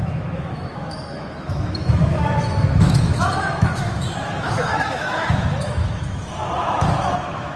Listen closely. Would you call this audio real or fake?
fake